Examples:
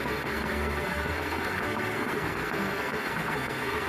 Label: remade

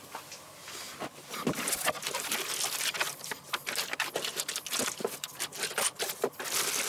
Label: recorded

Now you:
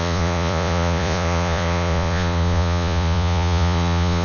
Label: remade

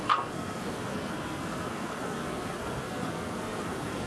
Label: remade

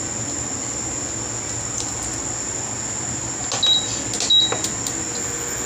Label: recorded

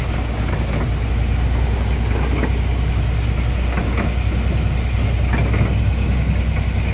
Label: recorded